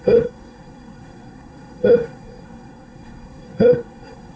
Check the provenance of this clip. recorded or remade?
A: remade